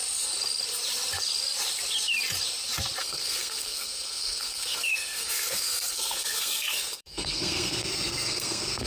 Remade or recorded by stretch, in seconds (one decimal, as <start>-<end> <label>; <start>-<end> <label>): 0.0-3.0 recorded; 3.0-8.9 remade